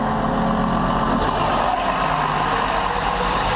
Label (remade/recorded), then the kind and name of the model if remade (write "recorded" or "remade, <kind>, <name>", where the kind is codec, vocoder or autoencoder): recorded